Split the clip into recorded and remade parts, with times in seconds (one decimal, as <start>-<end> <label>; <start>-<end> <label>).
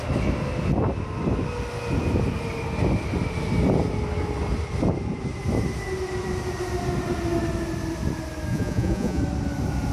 0.0-8.5 recorded; 8.5-9.2 remade; 9.2-9.9 recorded